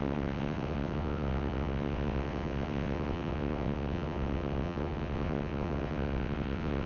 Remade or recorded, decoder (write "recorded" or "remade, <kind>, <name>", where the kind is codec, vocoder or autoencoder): remade, vocoder, WaveNeXt